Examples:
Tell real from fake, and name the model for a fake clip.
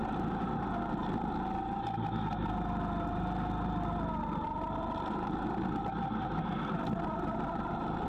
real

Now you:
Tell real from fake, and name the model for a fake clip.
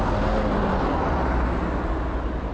real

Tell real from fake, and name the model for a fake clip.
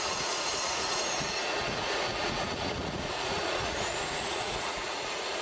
fake, vocoder, Vocos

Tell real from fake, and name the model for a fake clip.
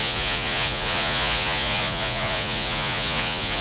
fake, vocoder, Vocos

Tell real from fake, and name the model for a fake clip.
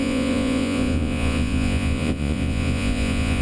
fake, vocoder, Vocos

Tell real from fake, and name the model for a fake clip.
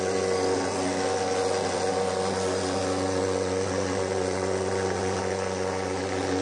real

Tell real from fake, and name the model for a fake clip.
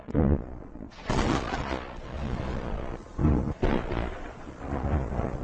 fake, vocoder, Vocos